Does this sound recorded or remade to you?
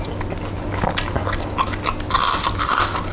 recorded